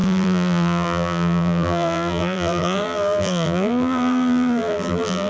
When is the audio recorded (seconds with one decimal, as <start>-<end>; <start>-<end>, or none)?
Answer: none